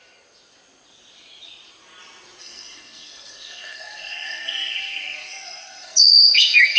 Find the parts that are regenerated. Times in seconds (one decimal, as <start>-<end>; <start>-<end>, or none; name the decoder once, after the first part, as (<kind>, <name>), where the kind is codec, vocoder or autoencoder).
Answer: 2.4-6.8 (codec, SNAC)